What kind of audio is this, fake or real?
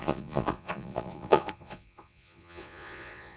fake